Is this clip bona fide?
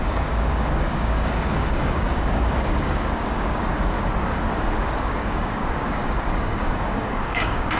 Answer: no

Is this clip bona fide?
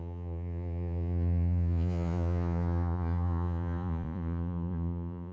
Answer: no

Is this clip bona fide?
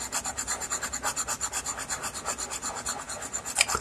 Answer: yes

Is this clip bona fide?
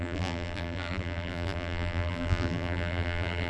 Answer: no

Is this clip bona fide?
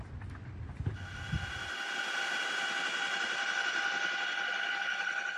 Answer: yes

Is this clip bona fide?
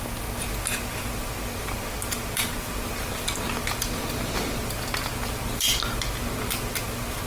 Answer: yes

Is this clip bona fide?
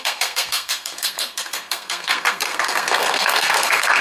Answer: no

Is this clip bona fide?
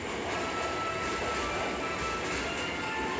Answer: yes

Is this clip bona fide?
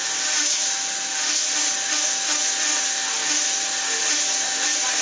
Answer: yes